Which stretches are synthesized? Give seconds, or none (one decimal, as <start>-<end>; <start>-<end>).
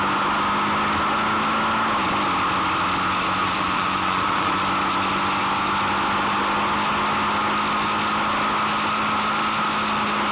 3.4-4.5